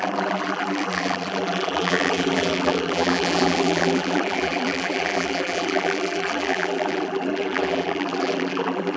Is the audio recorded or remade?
remade